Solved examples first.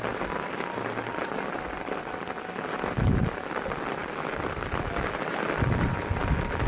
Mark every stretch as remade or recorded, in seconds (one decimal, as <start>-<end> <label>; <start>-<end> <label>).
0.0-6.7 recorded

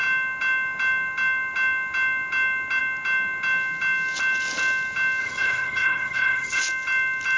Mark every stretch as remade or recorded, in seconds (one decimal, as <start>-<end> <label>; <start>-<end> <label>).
0.0-5.2 recorded; 5.2-6.6 remade; 6.6-7.4 recorded

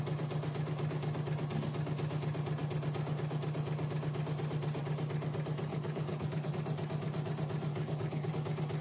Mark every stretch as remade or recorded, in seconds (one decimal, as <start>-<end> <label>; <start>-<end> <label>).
0.0-5.7 recorded; 5.7-6.5 remade; 6.5-7.7 recorded; 7.7-8.3 remade; 8.3-8.8 recorded